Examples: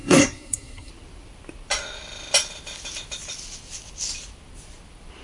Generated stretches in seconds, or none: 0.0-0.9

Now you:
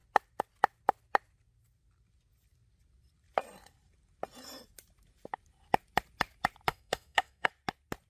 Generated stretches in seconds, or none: 6.7-7.5